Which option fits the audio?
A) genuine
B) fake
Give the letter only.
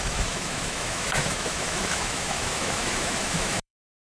B